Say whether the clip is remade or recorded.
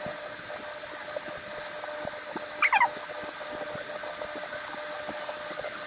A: recorded